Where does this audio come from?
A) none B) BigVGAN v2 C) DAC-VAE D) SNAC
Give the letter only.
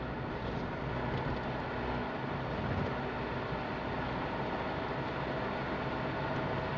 A